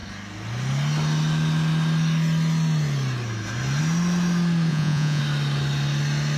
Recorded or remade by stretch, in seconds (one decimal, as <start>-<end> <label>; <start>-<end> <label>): 0.0-4.7 recorded; 4.7-5.2 remade; 5.2-6.4 recorded